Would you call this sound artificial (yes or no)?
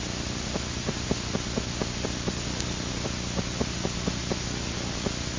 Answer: no